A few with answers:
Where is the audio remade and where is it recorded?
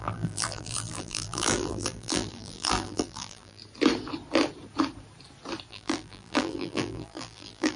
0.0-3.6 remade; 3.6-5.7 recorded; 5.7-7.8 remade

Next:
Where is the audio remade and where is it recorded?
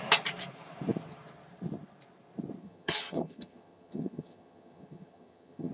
0.0-2.6 recorded; 2.6-5.7 remade